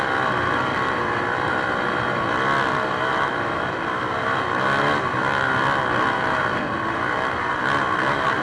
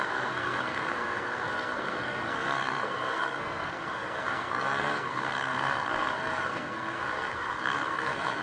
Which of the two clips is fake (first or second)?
second